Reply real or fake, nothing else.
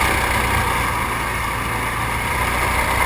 real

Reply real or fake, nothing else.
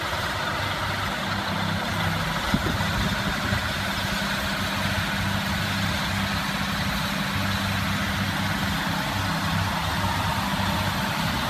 real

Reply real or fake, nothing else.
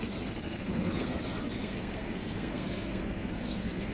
fake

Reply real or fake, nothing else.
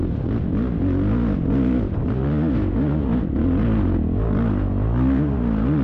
real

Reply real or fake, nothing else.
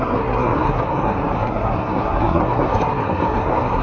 fake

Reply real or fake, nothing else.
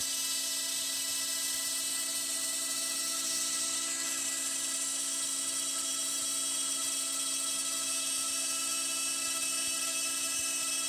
real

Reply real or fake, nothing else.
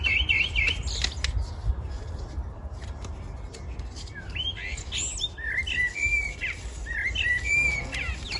real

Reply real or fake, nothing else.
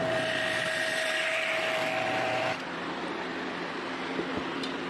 real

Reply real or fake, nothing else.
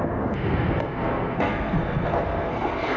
fake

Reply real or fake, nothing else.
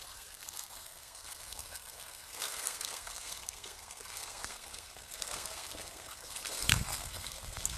fake